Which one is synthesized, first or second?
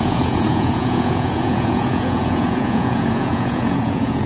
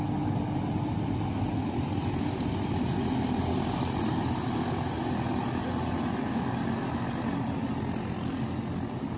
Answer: first